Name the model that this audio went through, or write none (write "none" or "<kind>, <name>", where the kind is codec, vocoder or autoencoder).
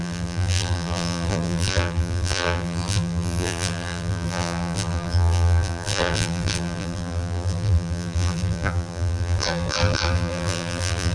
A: vocoder, BigVGAN v2